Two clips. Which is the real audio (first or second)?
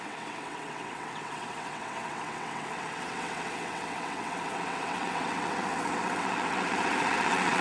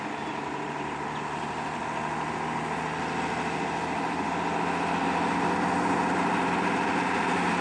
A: second